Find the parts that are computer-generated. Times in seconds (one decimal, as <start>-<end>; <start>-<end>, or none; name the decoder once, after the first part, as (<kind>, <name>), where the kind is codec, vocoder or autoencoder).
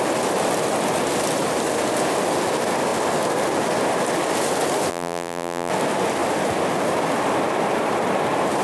4.9-5.7 (vocoder, BigVGAN v2)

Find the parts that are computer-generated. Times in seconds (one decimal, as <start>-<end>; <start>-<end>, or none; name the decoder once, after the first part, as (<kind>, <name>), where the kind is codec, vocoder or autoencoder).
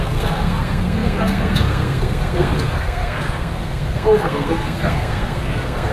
0.0-5.9 (codec, SNAC)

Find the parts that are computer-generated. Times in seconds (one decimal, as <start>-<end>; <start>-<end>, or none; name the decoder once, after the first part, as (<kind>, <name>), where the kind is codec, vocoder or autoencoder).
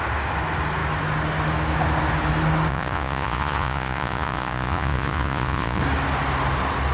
2.7-5.8 (vocoder, Vocos)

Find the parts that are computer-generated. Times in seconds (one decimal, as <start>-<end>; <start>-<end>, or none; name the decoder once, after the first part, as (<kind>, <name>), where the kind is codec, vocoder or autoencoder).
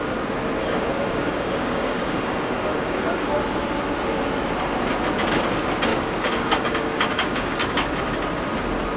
0.6-3.3 (codec, DAC); 5.9-8.0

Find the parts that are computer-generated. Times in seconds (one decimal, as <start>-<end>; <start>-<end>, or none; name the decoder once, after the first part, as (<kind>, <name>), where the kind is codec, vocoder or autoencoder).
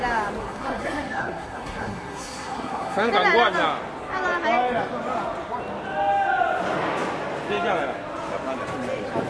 0.4-3.1 (codec, SNAC)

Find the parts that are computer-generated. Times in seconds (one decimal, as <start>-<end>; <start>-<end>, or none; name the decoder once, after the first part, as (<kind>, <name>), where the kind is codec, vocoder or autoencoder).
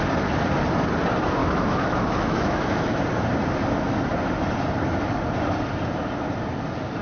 1.4-3.0 (autoencoder, DAC-VAE)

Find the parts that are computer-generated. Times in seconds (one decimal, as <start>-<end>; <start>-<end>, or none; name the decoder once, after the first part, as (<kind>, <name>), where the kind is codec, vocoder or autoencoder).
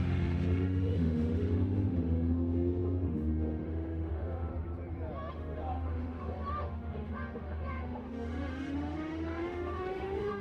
0.0-4.5 (autoencoder, DAC-VAE); 5.3-10.4